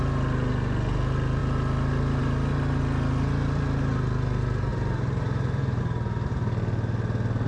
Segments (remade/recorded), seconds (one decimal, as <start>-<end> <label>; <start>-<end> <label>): 0.0-4.7 recorded; 4.7-5.8 remade; 5.8-7.5 recorded